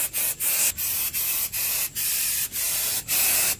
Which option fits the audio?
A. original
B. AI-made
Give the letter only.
A